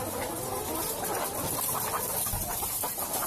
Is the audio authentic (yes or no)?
yes